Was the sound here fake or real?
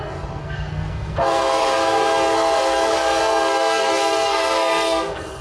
fake